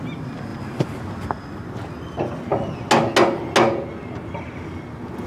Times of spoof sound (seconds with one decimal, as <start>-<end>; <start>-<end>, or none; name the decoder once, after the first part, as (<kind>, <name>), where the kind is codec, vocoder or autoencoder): none